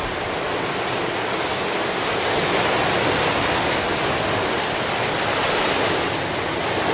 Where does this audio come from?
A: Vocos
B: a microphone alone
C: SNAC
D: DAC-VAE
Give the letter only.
B